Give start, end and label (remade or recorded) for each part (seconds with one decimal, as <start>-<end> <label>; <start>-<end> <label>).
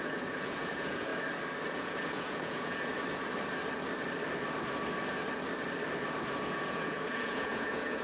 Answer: 0.0-1.1 remade; 1.1-1.7 recorded; 1.7-2.9 remade; 2.9-6.4 recorded; 6.4-8.0 remade